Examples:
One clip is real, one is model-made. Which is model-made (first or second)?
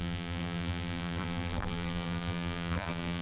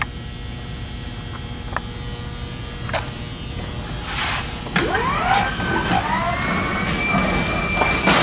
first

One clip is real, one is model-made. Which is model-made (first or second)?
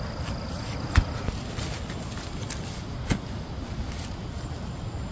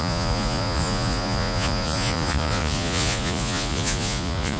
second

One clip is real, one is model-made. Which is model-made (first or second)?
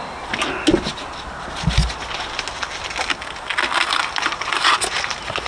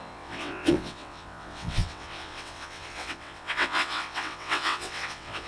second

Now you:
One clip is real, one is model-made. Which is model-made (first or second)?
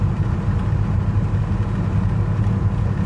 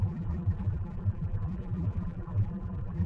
second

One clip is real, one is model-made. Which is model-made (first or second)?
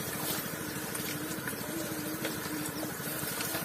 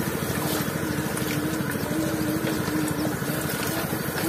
first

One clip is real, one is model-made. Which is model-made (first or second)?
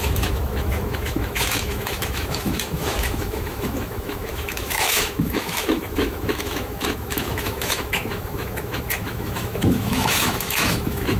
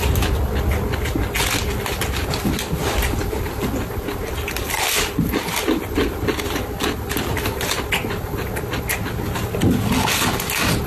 first